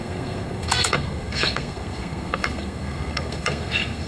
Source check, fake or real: fake